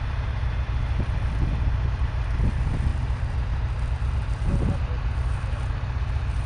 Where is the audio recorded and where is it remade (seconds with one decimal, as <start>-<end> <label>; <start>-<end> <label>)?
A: 0.0-6.5 recorded